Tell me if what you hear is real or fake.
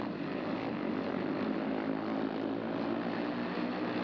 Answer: real